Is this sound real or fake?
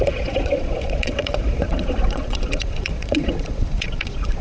fake